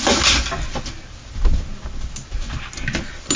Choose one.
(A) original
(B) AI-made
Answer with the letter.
A